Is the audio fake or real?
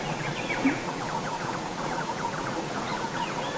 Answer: fake